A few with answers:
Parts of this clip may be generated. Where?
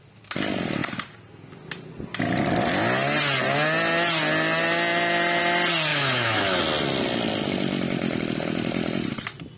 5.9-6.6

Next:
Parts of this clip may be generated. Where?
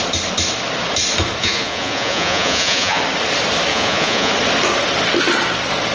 1.4-3.0; 3.7-4.3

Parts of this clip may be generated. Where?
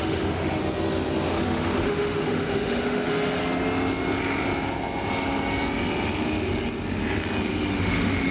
0.0-0.6; 1.3-3.4; 7.7-8.3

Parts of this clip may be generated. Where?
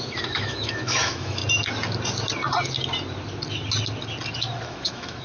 0.0-1.4; 4.3-5.2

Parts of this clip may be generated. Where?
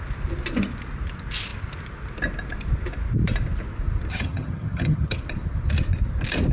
4.1-5.2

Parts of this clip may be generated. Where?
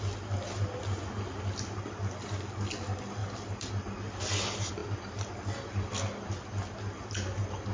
none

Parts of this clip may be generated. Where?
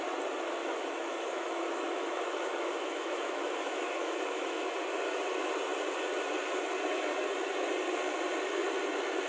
0.6-4.6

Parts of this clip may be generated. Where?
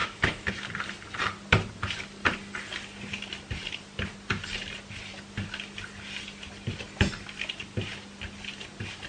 0.0-0.5